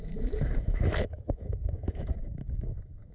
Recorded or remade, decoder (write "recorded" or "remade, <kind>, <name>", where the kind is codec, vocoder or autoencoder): remade, autoencoder, DAC-VAE